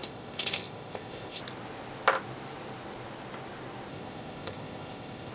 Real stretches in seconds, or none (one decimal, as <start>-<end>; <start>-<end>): 1.4-3.9